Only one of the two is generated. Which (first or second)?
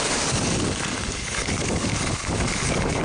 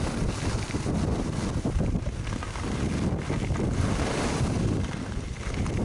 first